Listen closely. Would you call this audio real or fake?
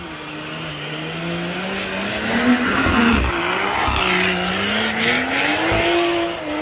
real